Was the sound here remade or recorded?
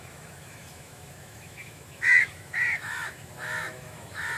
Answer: remade